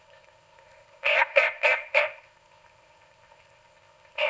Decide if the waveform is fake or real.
fake